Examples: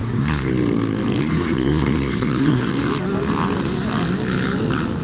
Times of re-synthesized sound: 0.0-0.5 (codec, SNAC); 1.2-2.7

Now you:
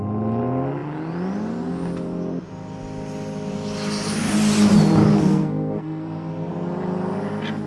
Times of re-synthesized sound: 5.1-6.5 (codec, SNAC)

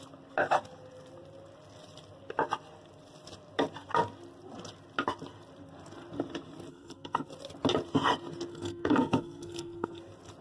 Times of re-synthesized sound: 6.7-7.3 (codec, SNAC); 8.5-10.0

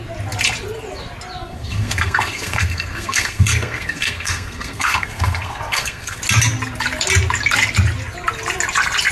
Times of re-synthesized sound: 1.4-6.2 (codec, SNAC)

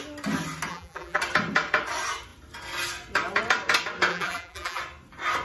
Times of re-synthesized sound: 0.7-1.2 (vocoder, BigVGAN v2); 4.1-4.8

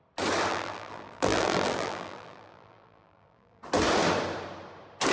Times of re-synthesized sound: 0.5-3.6 (vocoder, BigVGAN v2)

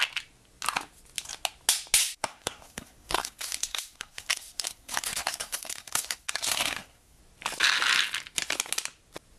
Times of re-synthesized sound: 2.0-7.2 (codec, SNAC)

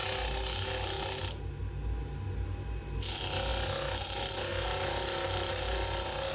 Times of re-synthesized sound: none